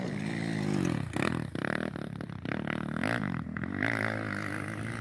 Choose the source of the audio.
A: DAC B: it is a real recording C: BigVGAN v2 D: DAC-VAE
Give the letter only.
B